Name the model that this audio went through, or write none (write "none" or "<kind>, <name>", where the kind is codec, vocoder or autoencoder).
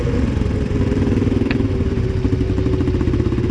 none